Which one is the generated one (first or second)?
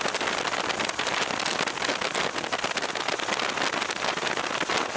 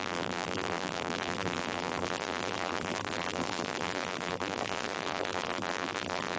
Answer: second